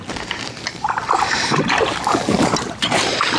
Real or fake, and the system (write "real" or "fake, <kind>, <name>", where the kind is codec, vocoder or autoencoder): real